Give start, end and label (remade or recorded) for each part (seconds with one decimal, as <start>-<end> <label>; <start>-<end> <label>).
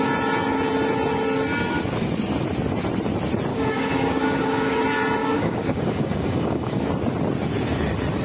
0.0-3.5 recorded; 3.5-4.8 remade; 4.8-5.2 recorded; 5.2-6.8 remade; 6.8-8.2 recorded